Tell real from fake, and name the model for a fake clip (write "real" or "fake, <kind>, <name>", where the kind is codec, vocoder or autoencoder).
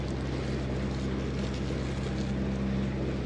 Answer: real